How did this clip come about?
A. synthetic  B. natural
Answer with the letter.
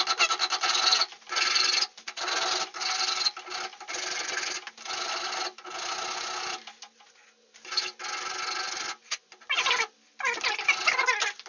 B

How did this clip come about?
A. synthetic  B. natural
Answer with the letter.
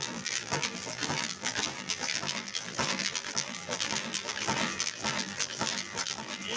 A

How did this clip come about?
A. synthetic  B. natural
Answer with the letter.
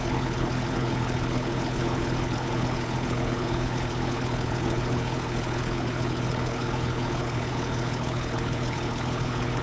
A